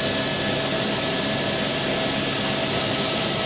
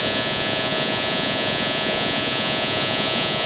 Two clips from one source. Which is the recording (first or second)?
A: first